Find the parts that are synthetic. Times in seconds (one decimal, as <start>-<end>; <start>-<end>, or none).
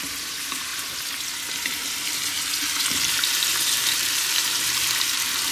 0.0-0.7; 3.1-5.5